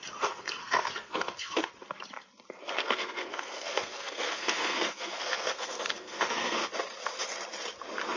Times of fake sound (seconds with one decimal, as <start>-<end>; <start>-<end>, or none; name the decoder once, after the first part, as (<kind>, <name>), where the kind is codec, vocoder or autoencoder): 0.6-1.7 (codec, SNAC); 2.6-6.6